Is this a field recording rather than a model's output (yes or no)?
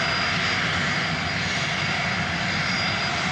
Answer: yes